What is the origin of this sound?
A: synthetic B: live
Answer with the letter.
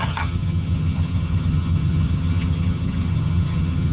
A